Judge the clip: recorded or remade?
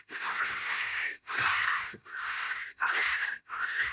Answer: remade